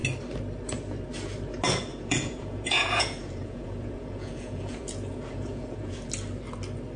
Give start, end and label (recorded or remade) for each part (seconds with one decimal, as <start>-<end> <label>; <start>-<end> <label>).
0.0-1.9 recorded; 1.9-6.1 remade; 6.1-7.0 recorded